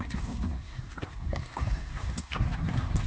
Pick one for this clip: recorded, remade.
remade